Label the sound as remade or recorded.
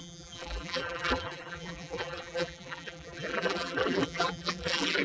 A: remade